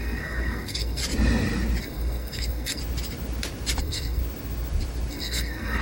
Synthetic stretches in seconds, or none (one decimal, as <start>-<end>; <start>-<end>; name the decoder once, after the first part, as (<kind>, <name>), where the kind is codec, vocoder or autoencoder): 0.0-1.0 (codec, SNAC); 1.8-2.8; 3.8-4.2; 5.1-5.8